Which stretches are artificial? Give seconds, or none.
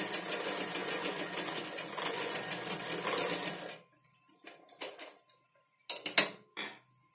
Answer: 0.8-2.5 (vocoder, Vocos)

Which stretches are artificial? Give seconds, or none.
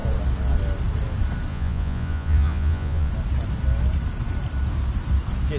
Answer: 1.5-3.1 (vocoder, Vocos)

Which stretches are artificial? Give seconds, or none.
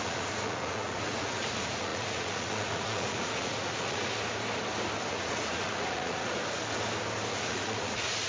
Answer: 0.0-4.1 (vocoder, Vocos); 5.1-6.4; 7.3-8.3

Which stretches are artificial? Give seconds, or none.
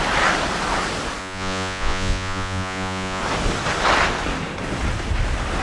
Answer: 1.2-3.2 (vocoder, Vocos)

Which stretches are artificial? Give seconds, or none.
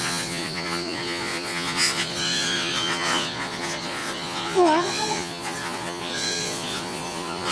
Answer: 0.0-7.5 (vocoder, Vocos)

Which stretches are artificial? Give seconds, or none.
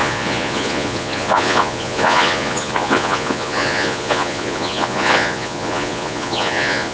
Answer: 0.0-6.9 (vocoder, Vocos)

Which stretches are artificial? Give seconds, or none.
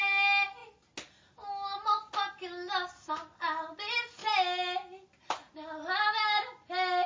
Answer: none